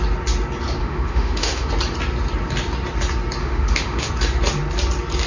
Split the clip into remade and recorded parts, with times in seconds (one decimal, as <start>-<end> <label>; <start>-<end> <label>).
0.0-0.8 recorded; 0.8-1.7 remade; 1.7-3.4 recorded; 3.4-4.1 remade; 4.1-5.3 recorded